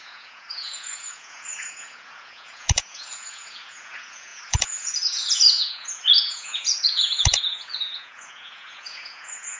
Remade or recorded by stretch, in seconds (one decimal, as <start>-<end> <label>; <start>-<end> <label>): 0.0-9.6 remade